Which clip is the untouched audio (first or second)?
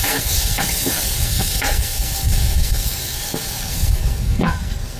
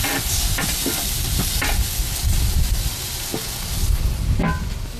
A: second